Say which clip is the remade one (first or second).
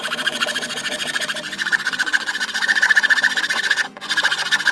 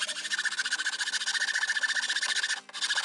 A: first